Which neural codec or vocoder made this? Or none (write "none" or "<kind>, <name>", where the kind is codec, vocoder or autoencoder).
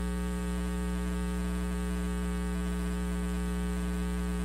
vocoder, BigVGAN v2